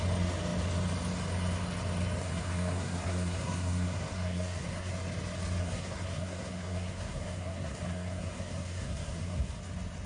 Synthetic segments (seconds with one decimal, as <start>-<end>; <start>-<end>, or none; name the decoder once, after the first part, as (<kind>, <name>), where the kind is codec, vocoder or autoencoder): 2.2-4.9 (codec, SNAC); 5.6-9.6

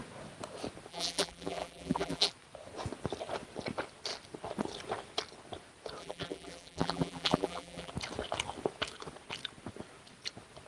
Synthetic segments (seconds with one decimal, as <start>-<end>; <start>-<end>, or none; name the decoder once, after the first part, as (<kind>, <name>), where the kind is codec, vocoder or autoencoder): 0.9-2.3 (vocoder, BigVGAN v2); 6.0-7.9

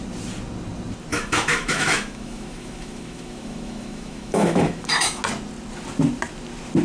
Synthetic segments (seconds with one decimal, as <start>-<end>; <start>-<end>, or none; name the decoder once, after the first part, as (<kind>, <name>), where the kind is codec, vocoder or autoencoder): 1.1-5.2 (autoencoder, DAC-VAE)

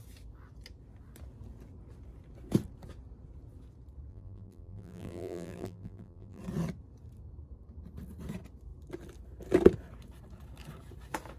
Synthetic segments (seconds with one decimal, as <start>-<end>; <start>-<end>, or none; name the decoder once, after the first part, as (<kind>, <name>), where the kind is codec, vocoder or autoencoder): 4.1-6.4 (vocoder, BigVGAN v2)

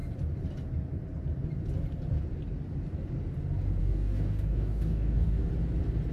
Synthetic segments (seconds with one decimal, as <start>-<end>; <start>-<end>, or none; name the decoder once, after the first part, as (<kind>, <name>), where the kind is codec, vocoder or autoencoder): 3.8-5.5 (codec, DAC)

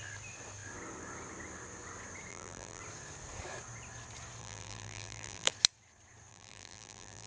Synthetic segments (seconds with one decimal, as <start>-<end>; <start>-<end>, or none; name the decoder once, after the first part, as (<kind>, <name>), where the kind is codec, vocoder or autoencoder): 2.3-2.8 (vocoder, BigVGAN v2); 4.4-5.5; 6.3-7.3